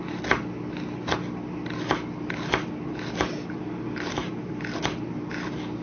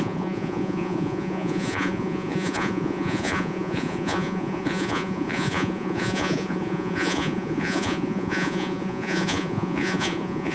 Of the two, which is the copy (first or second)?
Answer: second